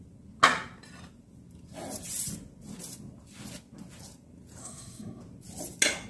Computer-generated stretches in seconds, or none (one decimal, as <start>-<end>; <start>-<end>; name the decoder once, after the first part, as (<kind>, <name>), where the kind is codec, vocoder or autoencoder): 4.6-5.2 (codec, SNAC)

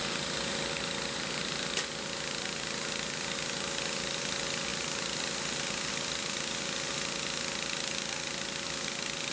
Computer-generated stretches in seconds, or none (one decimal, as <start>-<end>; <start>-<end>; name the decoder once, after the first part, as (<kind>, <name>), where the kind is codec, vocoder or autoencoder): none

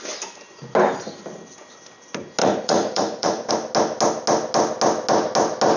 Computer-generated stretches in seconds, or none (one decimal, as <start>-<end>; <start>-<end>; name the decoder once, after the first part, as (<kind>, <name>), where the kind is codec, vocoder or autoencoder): 2.4-3.5 (vocoder, Vocos)

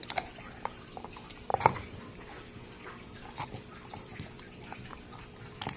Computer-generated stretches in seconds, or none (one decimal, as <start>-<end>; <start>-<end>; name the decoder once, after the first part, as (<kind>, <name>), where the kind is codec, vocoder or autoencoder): none

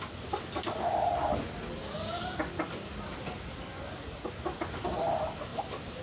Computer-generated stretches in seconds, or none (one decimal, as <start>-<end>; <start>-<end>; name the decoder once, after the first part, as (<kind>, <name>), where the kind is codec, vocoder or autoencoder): none

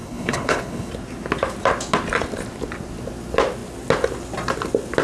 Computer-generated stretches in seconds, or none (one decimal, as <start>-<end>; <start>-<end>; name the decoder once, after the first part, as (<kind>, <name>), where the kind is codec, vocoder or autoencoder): 0.0-0.9 (codec, HILCodec)

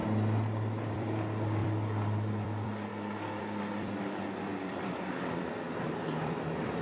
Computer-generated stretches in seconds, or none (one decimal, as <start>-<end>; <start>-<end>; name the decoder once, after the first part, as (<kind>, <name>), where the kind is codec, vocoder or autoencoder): 0.9-2.9 (vocoder, BigVGAN v2); 3.4-6.8